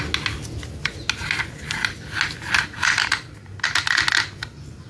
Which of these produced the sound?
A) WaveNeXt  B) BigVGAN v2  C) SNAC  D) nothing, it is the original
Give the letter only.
D